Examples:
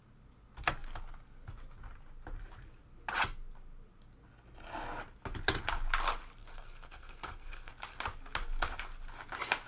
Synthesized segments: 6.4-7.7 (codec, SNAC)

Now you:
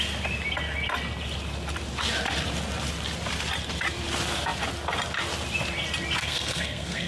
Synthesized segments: 6.2-7.1 (codec, SNAC)

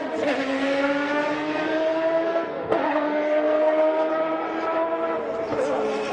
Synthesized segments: 0.4-4.1 (codec, SNAC)

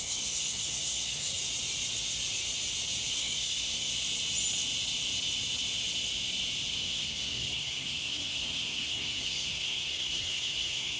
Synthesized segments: 0.0-1.4 (codec, SNAC); 3.1-3.9; 6.7-11.0